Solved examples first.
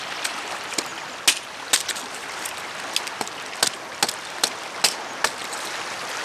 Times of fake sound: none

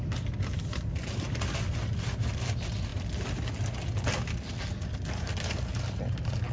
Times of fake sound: 0.0-2.9 (vocoder, BigVGAN v2); 5.2-6.5

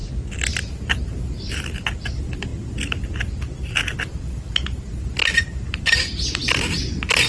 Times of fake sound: 1.0-2.5 (vocoder, BigVGAN v2); 6.3-7.3

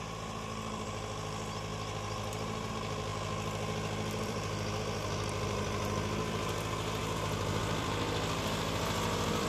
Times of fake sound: 0.0-7.0 (vocoder, BigVGAN v2); 7.6-9.5

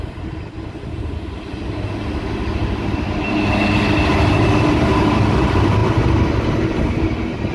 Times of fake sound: none

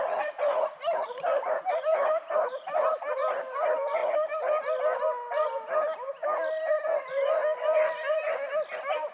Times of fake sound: 0.0-4.0 (vocoder, BigVGAN v2); 7.0-7.4

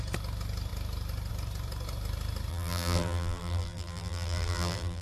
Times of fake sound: 2.5-5.0 (vocoder, BigVGAN v2)

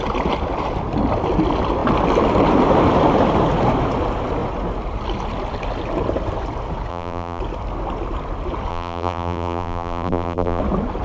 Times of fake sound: 6.9-7.4 (vocoder, BigVGAN v2); 8.7-10.6